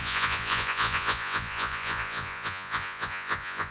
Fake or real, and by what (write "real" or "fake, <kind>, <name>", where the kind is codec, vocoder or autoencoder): fake, vocoder, Vocos